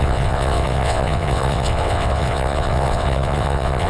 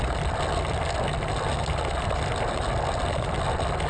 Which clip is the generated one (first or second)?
first